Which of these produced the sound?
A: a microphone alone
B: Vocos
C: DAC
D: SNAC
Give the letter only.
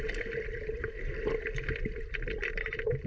A